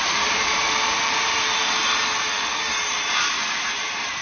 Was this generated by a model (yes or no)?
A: yes